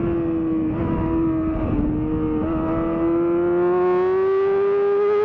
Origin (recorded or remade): recorded